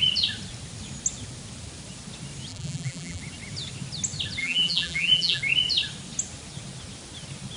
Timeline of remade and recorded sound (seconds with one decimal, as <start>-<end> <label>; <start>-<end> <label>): 0.0-2.5 recorded; 2.5-3.2 remade; 3.2-4.4 recorded; 4.4-5.4 remade; 5.4-7.6 recorded